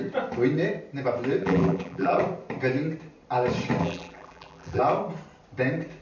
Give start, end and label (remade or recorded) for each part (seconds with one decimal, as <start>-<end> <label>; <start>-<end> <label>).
0.0-1.4 recorded; 1.4-2.2 remade; 2.2-3.8 recorded; 3.8-4.8 remade; 4.8-6.0 recorded